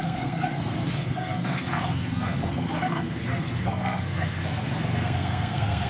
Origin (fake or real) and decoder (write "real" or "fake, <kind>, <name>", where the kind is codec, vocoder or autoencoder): fake, codec, SNAC